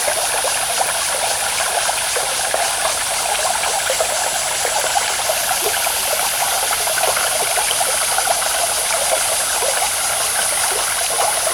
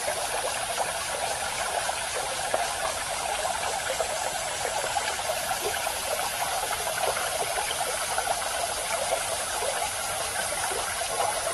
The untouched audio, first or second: first